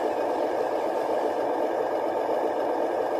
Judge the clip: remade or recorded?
remade